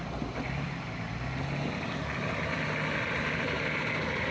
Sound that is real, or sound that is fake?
real